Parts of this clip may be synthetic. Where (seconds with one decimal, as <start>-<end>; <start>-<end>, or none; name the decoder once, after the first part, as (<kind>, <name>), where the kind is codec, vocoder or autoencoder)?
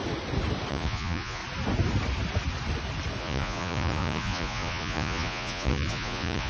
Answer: 0.7-1.4 (vocoder, Vocos); 3.2-6.5